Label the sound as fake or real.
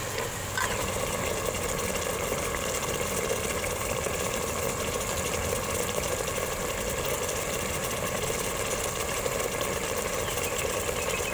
real